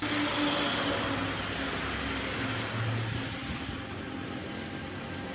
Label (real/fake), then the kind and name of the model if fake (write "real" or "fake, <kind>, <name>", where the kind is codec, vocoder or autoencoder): real